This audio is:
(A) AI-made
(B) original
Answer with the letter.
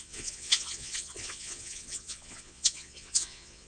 A